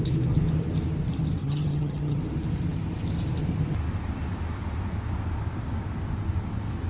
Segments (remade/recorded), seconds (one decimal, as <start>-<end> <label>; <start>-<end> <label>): 0.0-1.4 recorded; 1.4-2.2 remade; 2.2-6.9 recorded